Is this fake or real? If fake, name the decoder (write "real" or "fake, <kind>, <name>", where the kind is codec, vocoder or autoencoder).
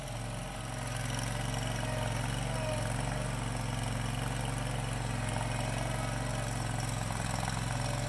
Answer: real